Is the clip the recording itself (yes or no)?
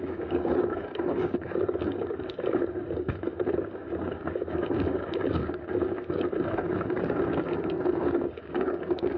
no